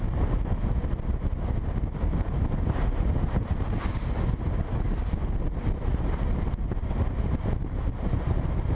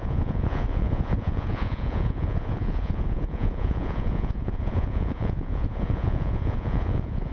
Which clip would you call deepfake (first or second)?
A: second